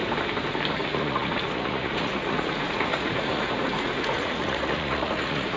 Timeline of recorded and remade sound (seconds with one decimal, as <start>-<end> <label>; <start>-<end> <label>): 0.0-0.7 recorded; 0.7-5.6 remade